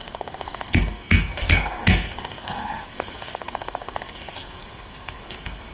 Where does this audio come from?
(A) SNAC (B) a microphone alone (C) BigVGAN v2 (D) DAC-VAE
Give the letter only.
A